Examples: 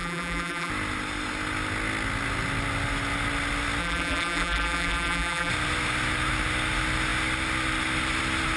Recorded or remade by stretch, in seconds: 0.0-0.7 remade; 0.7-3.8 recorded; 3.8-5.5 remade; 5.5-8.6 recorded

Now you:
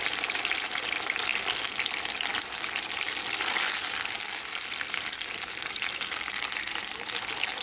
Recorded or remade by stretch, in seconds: 0.0-1.3 remade; 1.3-1.9 recorded; 1.9-7.6 remade

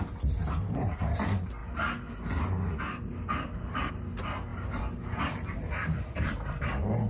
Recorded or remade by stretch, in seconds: 0.0-0.4 recorded; 0.4-1.0 remade; 1.0-7.1 recorded

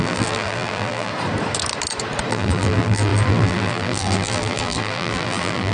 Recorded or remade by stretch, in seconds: 0.0-1.1 remade; 1.1-2.3 recorded; 2.3-5.7 remade